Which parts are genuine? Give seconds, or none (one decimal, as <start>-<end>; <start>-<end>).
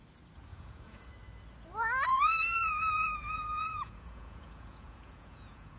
0.0-0.5; 1.1-2.1